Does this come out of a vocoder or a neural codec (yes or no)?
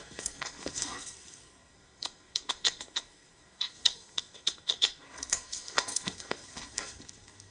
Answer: yes